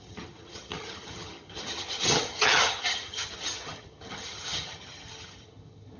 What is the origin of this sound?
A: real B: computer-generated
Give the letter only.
B